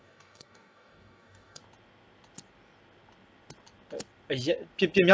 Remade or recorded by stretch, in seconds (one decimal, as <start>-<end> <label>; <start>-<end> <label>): 0.0-1.6 remade; 1.6-5.1 recorded